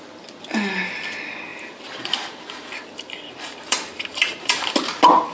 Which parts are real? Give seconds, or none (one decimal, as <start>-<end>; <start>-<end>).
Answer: 0.0-1.5; 4.7-5.3